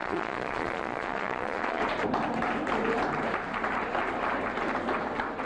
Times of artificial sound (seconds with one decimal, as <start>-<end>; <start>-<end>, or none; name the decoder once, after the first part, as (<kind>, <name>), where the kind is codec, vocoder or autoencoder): 0.0-1.8 (vocoder, Vocos)